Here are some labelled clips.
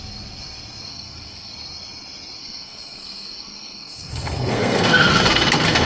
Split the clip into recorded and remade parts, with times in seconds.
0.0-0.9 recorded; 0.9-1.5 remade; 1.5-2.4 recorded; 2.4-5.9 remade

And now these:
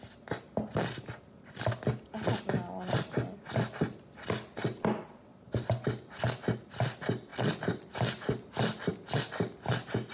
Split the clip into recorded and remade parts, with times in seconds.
0.0-10.1 recorded